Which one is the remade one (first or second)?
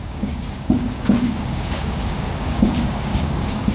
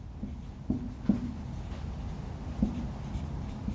first